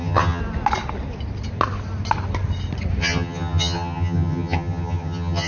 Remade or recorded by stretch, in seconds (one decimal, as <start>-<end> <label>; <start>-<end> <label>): 0.0-0.4 remade; 0.4-3.0 recorded; 3.0-5.5 remade